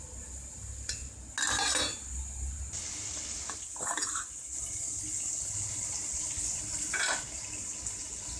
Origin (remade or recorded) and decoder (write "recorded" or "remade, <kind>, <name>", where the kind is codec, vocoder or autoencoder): recorded